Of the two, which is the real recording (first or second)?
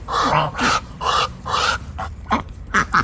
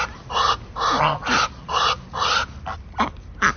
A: second